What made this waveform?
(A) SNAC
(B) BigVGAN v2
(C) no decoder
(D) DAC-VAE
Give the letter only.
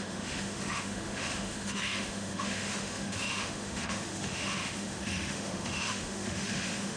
D